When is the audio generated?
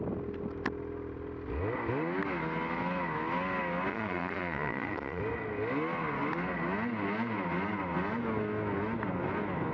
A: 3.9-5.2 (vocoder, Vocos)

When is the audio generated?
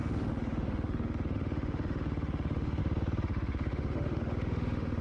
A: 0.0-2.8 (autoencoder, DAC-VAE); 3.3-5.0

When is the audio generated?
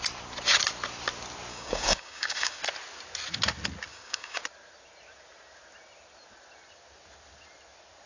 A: 1.5-2.6 (codec, DAC); 3.9-4.4